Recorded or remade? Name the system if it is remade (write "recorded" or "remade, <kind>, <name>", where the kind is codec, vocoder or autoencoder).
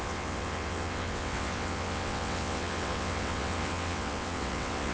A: remade, vocoder, WaveNeXt